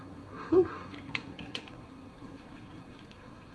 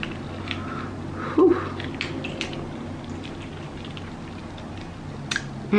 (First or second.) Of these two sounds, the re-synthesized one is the first